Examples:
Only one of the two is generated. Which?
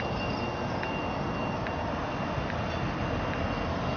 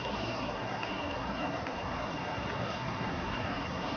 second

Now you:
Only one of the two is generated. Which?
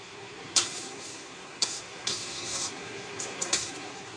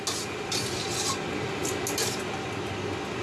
first